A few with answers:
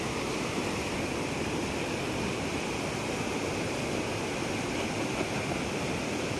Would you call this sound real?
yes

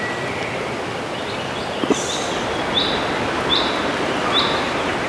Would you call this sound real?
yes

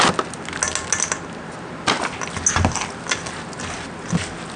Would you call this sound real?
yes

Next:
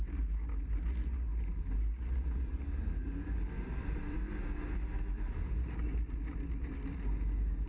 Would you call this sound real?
yes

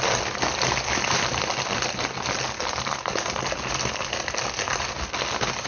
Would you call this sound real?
yes